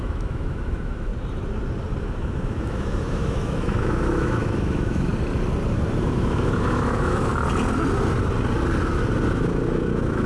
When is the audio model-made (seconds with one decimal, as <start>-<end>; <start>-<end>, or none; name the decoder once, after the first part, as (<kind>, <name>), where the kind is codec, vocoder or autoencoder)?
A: 0.0-1.1 (autoencoder, DAC-VAE); 2.0-5.1; 6.0-7.3; 9.3-10.3